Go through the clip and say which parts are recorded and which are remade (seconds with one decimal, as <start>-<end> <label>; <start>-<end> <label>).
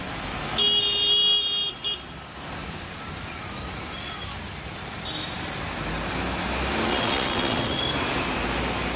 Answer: 0.0-6.9 recorded; 6.9-7.8 remade; 7.8-9.0 recorded